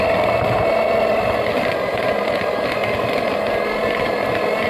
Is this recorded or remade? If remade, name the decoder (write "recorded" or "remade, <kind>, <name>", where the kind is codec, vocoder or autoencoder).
recorded